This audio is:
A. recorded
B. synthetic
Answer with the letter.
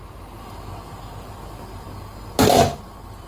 A